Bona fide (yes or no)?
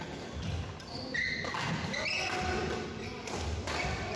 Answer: yes